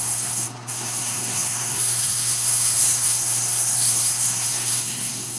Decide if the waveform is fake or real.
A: fake